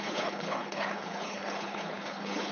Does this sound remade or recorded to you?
remade